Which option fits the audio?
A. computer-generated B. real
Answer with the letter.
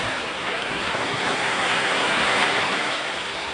A